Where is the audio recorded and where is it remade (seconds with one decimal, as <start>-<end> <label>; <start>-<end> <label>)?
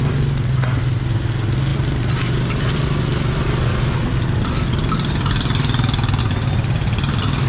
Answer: 0.0-7.5 recorded